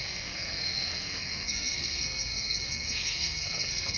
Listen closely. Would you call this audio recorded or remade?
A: remade